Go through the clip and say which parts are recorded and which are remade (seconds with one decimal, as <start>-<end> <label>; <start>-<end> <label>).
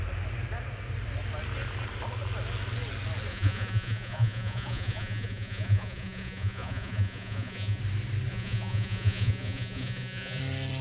0.0-3.3 recorded; 3.3-7.8 remade; 7.8-8.3 recorded; 8.3-10.4 remade; 10.4-10.8 recorded